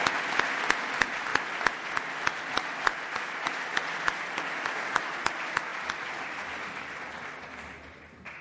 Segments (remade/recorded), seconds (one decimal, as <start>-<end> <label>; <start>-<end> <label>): 0.0-8.4 recorded